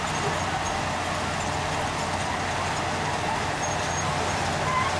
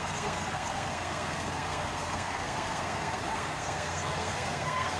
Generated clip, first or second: second